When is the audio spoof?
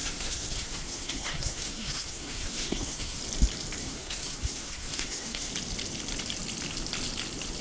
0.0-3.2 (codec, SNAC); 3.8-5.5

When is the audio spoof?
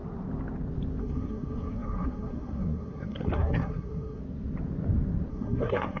1.0-4.2 (codec, SNAC); 5.3-6.0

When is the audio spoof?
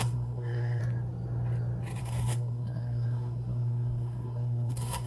0.0-0.8 (codec, SNAC); 2.0-5.1